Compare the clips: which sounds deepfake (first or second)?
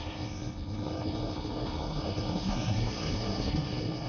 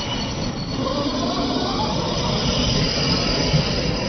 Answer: first